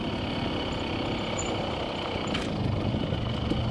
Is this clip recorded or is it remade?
recorded